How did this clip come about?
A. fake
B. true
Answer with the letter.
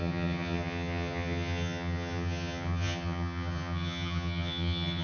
A